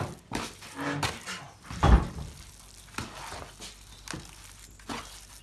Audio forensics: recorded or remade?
recorded